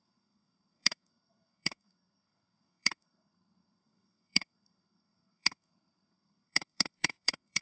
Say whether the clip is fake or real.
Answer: fake